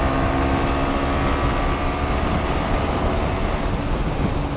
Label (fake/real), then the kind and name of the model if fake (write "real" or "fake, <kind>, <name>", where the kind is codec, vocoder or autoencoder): real